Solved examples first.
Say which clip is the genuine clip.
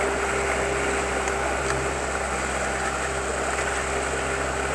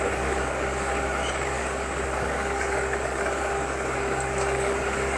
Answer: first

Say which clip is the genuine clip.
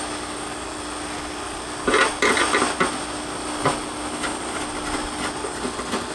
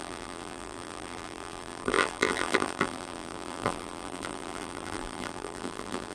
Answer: first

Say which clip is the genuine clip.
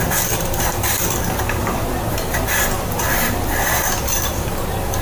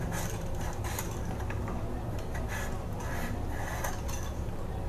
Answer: second